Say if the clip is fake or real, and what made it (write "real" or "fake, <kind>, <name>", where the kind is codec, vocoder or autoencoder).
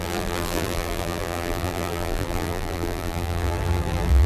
fake, vocoder, BigVGAN v2